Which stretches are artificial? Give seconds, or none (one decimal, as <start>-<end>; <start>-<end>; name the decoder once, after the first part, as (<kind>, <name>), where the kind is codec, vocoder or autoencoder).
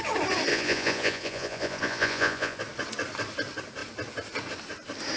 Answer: 0.5-2.6 (vocoder, Vocos)